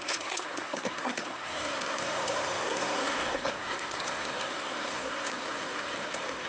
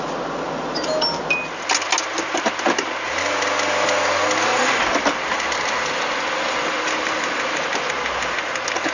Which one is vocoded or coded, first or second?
first